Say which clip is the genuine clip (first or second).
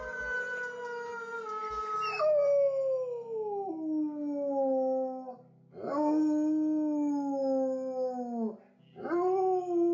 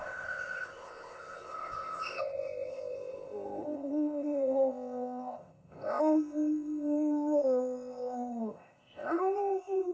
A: first